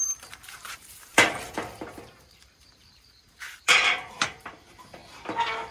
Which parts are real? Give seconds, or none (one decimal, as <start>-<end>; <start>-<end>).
5.0-5.7